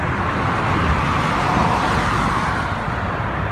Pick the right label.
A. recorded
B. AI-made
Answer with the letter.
A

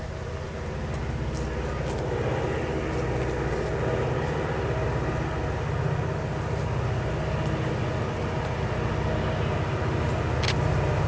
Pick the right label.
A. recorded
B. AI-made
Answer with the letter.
A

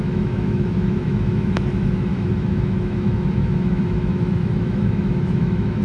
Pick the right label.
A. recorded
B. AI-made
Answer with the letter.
B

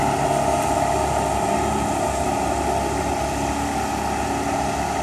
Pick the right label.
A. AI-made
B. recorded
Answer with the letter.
B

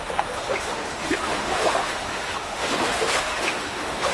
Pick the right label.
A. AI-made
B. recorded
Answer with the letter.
A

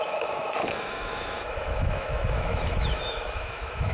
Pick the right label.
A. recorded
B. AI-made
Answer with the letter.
B